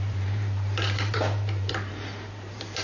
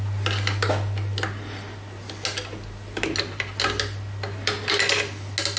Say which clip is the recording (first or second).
second